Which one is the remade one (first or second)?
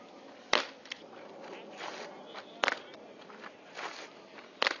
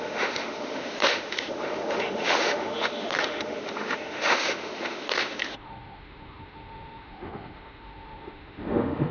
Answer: second